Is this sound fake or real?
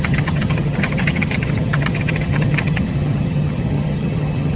fake